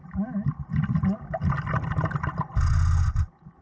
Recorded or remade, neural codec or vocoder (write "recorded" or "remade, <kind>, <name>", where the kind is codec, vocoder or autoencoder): recorded